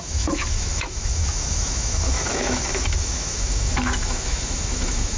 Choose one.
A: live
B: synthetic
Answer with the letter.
B